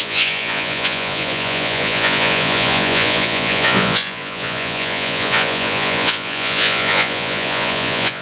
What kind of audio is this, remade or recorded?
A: remade